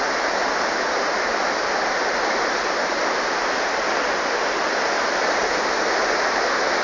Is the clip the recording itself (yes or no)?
yes